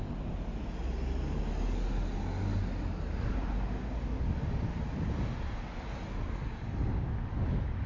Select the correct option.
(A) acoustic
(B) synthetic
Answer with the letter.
A